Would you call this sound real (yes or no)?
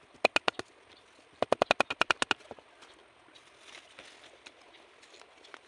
yes